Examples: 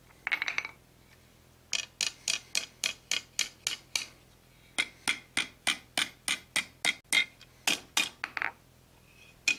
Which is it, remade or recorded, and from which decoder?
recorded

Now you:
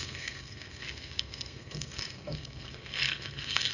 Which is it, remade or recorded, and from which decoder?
remade, codec, SNAC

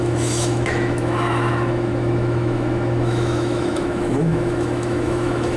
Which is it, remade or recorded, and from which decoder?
remade, autoencoder, DAC-VAE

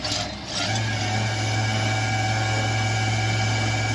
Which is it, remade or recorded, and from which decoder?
recorded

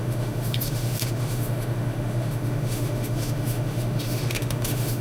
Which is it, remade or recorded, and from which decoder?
remade, autoencoder, DAC-VAE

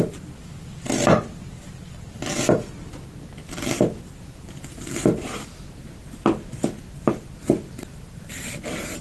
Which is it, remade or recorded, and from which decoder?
recorded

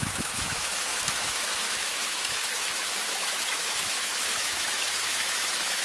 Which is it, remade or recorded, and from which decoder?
remade, autoencoder, DAC-VAE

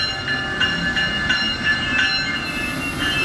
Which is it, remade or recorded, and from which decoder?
recorded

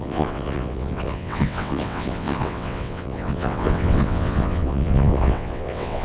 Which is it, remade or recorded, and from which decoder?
remade, vocoder, WaveNeXt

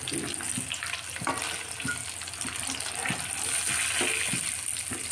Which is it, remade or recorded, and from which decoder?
recorded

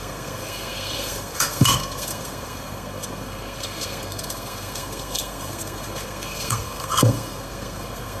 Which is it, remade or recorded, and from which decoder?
remade, codec, SNAC